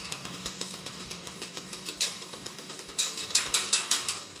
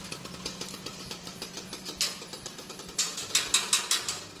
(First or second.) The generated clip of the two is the first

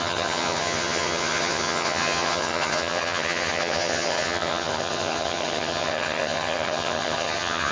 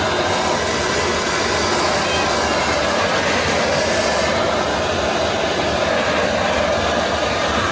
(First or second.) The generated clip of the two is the first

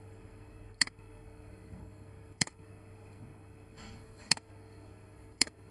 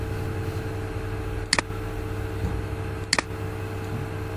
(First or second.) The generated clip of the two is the first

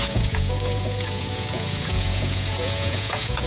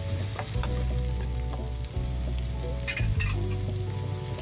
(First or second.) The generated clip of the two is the first